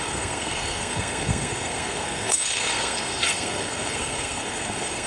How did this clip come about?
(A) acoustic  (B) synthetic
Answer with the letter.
B